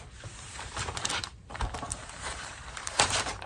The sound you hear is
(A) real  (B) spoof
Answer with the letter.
B